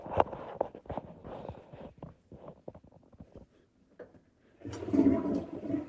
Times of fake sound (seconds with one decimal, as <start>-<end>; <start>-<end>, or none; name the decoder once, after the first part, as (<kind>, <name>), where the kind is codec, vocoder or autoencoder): none